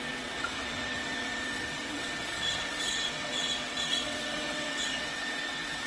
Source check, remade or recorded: remade